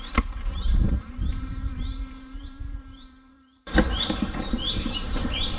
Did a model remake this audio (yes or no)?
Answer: yes